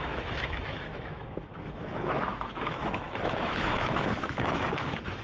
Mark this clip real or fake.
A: fake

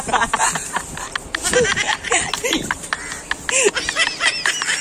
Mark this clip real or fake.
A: real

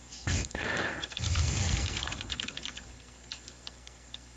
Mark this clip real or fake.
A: fake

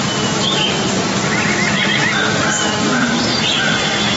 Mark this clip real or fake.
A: real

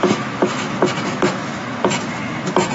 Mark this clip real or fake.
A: fake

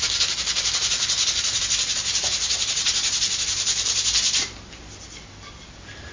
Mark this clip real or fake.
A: real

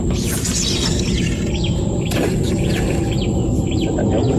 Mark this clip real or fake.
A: real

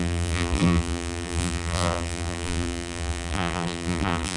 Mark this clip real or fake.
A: fake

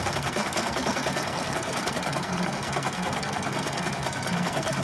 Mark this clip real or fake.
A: fake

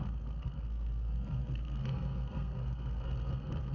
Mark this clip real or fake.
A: fake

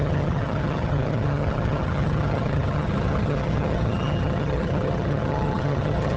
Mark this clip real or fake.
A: fake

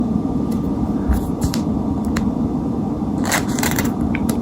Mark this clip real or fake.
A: fake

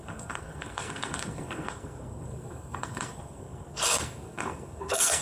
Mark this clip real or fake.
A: fake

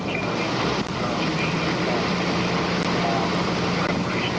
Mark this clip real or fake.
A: real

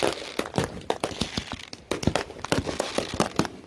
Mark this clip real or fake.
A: real